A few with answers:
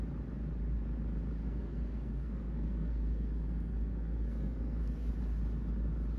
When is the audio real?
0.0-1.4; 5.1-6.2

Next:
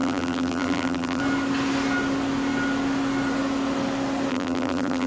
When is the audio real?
1.2-4.3

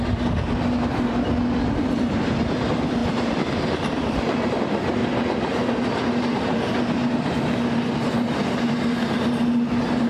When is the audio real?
0.0-3.0; 4.6-10.1

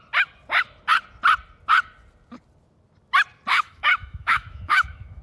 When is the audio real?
0.0-3.5